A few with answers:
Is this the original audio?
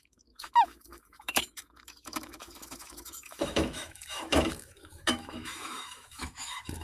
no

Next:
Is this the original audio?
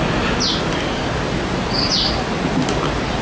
yes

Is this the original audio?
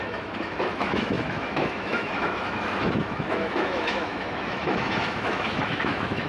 no